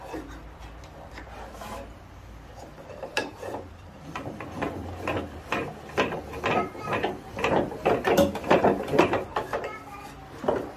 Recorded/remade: remade